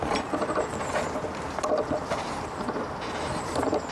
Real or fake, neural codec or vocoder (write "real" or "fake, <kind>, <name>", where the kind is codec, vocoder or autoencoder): real